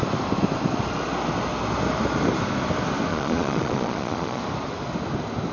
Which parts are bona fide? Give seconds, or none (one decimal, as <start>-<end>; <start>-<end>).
0.0-3.1; 4.4-5.5